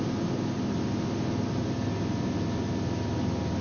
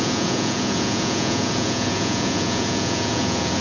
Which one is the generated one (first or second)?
second